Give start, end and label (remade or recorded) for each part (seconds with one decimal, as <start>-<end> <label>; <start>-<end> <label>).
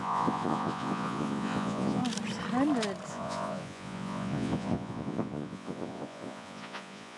0.0-2.0 remade; 2.0-3.1 recorded; 3.1-7.2 remade